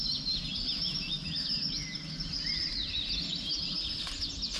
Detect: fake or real real